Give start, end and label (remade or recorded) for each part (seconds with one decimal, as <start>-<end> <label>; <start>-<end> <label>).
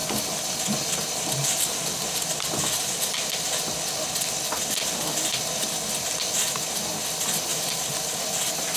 0.0-8.8 recorded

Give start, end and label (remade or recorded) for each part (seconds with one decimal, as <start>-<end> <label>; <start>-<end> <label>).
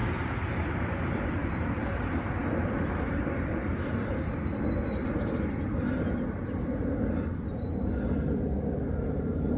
0.0-9.6 recorded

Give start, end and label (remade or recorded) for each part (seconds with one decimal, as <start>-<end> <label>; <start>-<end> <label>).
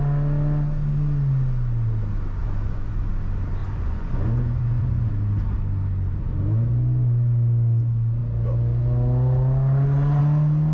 0.0-2.4 recorded; 2.4-3.1 remade; 3.1-3.6 recorded; 3.6-5.1 remade; 5.1-10.7 recorded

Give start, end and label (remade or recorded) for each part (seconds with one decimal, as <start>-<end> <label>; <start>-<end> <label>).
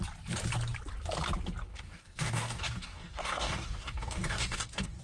0.0-1.7 recorded; 1.7-5.0 remade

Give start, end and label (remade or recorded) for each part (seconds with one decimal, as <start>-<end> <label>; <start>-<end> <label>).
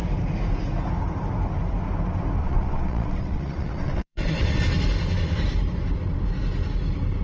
0.0-2.4 recorded; 2.4-4.6 remade; 4.6-7.2 recorded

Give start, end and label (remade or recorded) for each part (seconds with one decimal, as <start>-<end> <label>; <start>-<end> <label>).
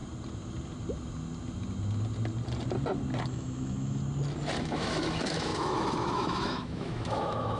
0.0-3.3 recorded; 3.3-4.0 remade; 4.0-4.6 recorded; 4.6-7.6 remade